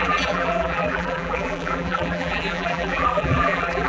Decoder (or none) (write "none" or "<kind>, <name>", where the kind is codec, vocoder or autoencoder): vocoder, BigVGAN v2